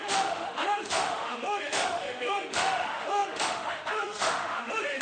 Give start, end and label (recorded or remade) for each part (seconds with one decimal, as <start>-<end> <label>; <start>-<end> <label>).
0.0-5.0 remade